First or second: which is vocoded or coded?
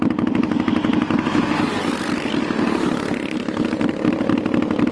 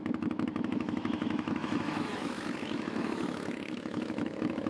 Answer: second